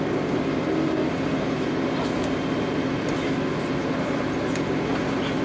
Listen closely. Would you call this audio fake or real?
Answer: real